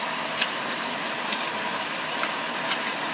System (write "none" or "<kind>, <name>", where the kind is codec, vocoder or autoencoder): none